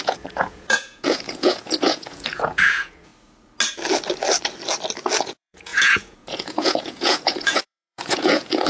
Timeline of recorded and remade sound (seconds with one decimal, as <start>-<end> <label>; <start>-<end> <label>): 0.0-3.1 remade; 3.1-5.2 recorded; 5.2-8.7 remade